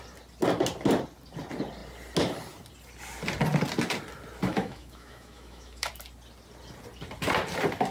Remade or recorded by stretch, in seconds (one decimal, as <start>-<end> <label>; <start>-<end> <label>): 0.0-4.5 recorded; 4.5-5.9 remade; 5.9-7.9 recorded